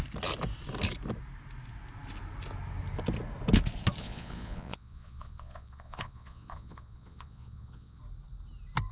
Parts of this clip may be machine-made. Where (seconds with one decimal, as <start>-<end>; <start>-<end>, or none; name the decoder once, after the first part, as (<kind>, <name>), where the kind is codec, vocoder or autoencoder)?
4.0-8.0 (vocoder, Vocos)